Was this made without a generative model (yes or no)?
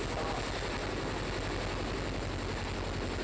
yes